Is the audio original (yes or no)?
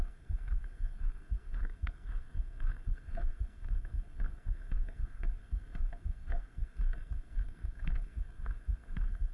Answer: no